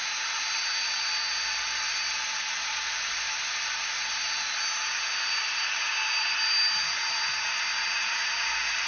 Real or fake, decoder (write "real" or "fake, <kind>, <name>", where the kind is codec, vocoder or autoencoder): real